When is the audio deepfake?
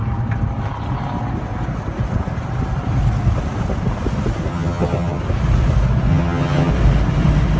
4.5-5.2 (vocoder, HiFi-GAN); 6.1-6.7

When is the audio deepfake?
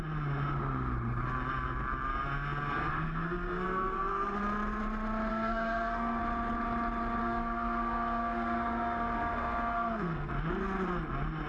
2.9-4.4 (codec, SNAC); 5.3-6.2; 7.2-10.3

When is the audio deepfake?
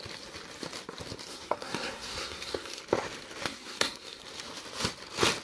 1.3-2.8 (codec, SNAC); 3.4-4.2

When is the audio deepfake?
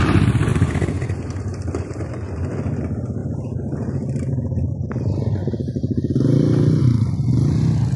0.5-2.1 (vocoder, BigVGAN v2); 5.4-6.8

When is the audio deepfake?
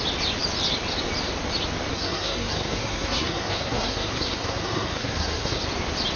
1.9-5.6 (codec, SNAC)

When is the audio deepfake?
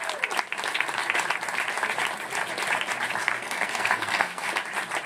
3.2-4.5 (codec, SNAC)